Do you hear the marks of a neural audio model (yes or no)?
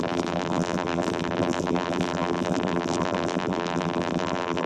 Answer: yes